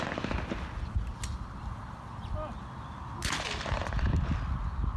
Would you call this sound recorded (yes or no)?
yes